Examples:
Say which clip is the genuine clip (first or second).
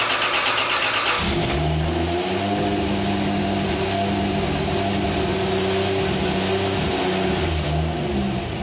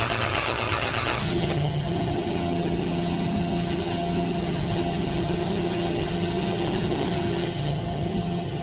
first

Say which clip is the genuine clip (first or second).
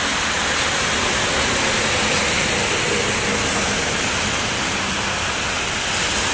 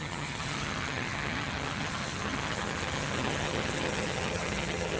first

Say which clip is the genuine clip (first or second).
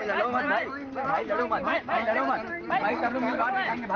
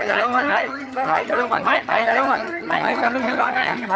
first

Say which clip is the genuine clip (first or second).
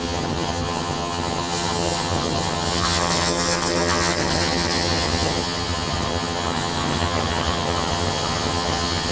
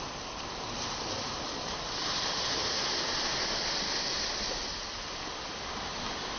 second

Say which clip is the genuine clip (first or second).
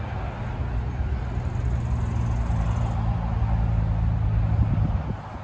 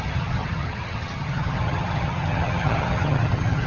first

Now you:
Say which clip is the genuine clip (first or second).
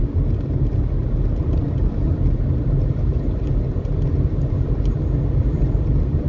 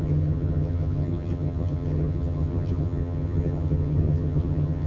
first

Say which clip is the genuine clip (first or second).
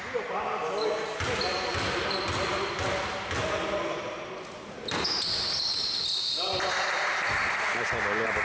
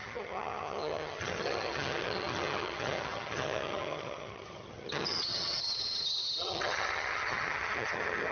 first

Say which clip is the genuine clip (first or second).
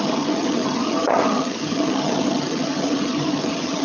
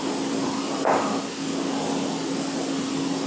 second